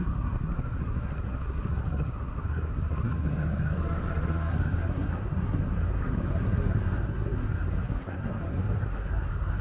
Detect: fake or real fake